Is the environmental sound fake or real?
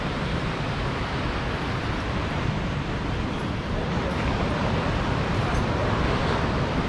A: real